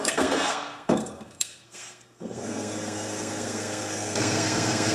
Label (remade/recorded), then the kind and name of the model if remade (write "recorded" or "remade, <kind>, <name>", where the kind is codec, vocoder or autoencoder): remade, codec, SNAC